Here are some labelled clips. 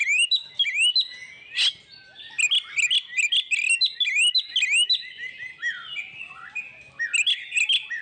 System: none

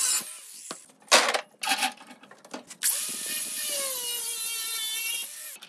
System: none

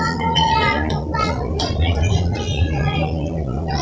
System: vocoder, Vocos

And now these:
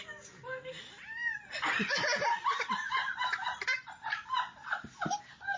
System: none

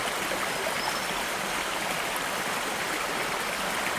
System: none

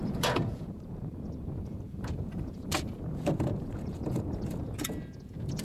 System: vocoder, Vocos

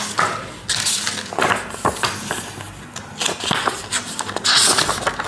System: none